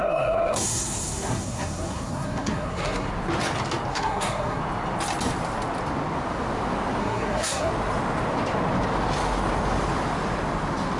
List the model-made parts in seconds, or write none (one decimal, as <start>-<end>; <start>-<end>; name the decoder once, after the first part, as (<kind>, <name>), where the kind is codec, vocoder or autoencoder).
0.0-3.1 (codec, SNAC); 3.9-4.6; 7.0-7.7